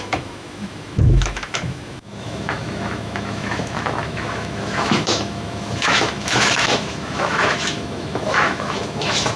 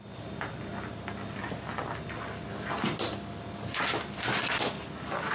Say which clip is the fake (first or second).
first